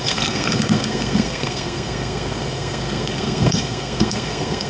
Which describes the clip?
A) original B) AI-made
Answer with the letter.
B